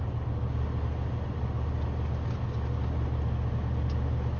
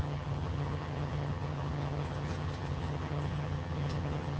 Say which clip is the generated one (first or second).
second